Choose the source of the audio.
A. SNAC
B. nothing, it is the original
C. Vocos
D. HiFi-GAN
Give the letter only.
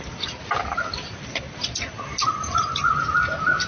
B